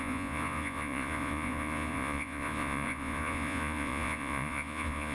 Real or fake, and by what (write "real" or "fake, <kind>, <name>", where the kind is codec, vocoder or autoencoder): fake, vocoder, Vocos